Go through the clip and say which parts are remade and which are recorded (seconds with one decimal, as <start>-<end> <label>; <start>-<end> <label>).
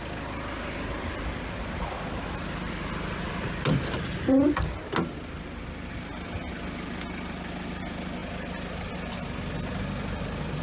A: 0.0-10.6 recorded